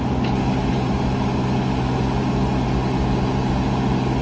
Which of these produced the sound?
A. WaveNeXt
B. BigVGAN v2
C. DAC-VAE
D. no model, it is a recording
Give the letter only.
D